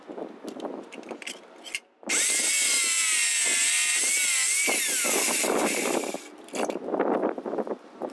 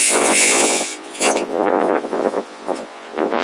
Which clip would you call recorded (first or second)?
first